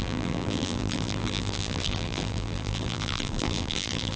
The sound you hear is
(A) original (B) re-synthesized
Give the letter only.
B